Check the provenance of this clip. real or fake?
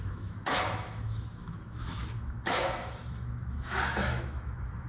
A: fake